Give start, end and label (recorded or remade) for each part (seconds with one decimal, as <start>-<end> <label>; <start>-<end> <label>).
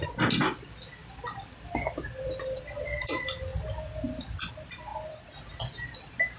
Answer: 0.0-1.0 recorded; 1.0-2.6 remade; 2.6-6.4 recorded